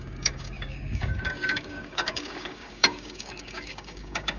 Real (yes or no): no